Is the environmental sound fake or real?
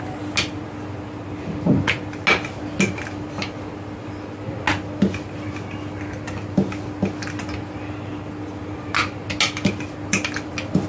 real